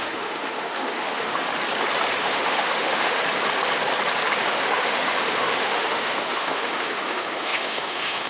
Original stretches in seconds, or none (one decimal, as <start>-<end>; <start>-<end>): 1.5-2.2; 3.2-4.5